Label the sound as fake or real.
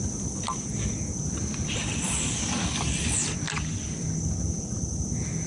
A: real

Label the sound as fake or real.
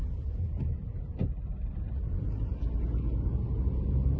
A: real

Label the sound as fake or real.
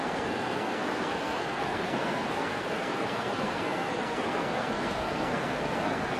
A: fake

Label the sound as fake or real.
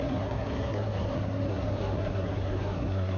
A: fake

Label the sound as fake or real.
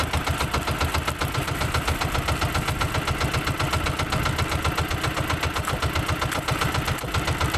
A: real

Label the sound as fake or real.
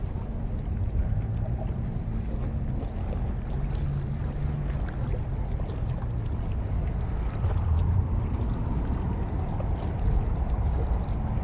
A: real